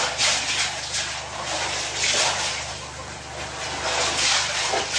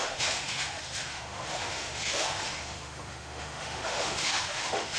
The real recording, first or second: first